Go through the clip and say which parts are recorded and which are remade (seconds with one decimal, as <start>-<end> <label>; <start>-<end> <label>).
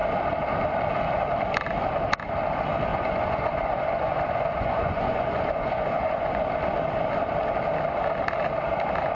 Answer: 0.0-2.9 recorded; 2.9-6.4 remade; 6.4-9.1 recorded